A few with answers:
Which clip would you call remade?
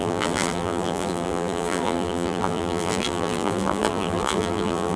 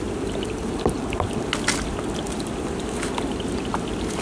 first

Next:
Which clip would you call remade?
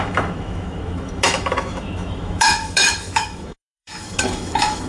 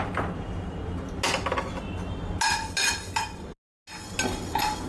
first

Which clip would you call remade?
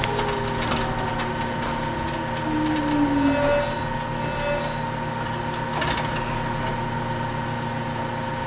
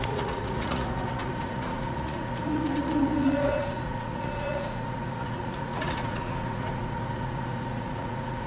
second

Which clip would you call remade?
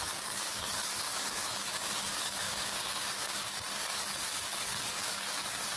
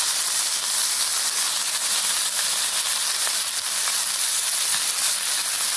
first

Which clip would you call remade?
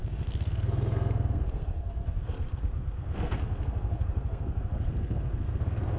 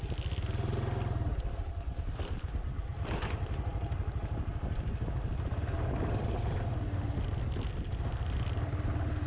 first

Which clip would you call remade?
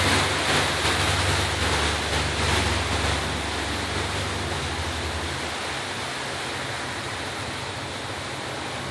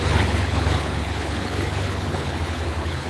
second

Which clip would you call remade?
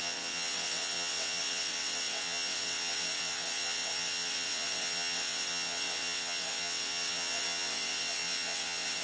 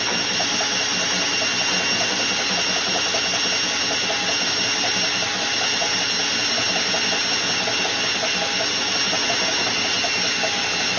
first